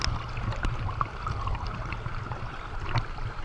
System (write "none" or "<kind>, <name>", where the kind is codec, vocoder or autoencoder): none